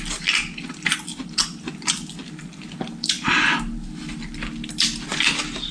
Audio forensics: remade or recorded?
recorded